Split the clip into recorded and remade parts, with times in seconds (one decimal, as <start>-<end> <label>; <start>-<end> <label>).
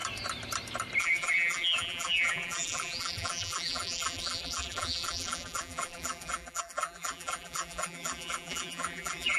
0.0-1.0 recorded; 1.0-9.4 remade